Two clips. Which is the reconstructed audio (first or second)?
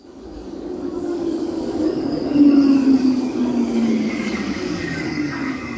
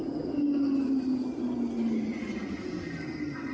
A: first